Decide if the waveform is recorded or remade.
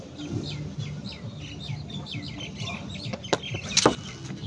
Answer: recorded